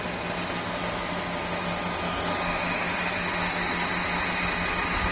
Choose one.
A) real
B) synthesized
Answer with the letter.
A